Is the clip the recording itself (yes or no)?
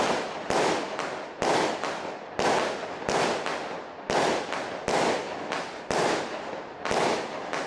yes